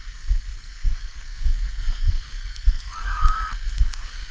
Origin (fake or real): fake